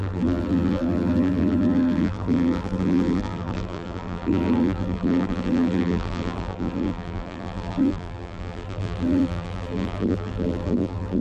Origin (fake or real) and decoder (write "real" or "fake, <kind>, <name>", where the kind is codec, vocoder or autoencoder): fake, vocoder, BigVGAN v2